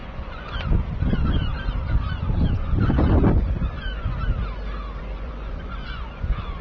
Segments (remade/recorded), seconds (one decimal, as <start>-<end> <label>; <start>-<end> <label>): 0.0-4.2 remade; 4.2-5.0 recorded; 5.0-6.6 remade